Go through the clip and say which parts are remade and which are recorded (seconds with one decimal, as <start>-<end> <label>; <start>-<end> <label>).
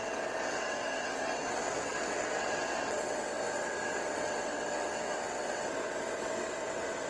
0.0-7.1 remade